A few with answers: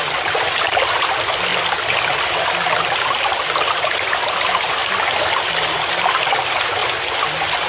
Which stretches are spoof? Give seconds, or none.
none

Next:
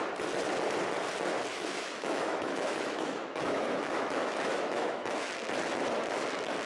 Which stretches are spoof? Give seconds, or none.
1.5-5.3 (autoencoder, DAC-VAE)

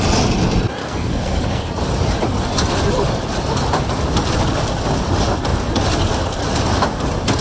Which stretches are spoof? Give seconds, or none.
0.8-1.6 (codec, SNAC)

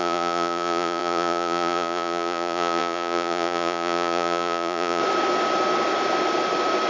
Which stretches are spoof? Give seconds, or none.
0.0-5.0 (vocoder, Vocos)

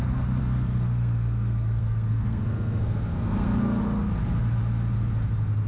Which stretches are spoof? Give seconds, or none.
0.4-3.8 (codec, SNAC)

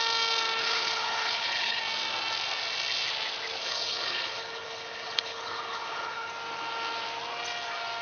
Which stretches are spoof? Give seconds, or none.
0.6-1.8 (codec, HILCodec); 3.6-6.3